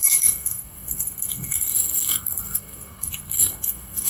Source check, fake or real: fake